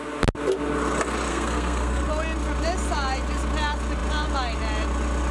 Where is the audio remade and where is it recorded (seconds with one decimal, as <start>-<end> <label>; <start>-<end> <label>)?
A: 0.0-1.3 recorded; 1.3-2.0 remade; 2.0-5.3 recorded